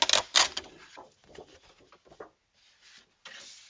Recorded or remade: recorded